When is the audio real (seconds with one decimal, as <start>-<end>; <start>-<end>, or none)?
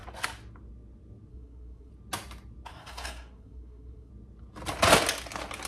0.0-1.3; 1.9-2.7; 4.1-5.7